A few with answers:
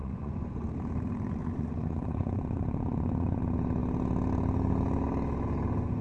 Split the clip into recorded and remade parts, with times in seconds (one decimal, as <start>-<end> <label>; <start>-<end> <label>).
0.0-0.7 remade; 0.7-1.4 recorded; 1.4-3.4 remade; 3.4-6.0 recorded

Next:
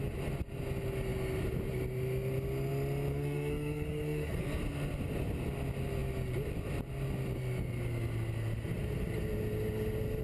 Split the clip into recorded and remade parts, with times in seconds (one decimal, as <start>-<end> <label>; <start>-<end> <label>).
0.0-3.1 recorded; 3.1-4.6 remade; 4.6-10.2 recorded

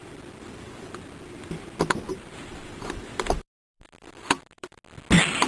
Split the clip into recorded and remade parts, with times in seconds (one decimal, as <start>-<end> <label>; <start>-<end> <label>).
0.0-1.0 remade; 1.0-2.1 recorded; 2.1-4.8 remade; 4.8-5.5 recorded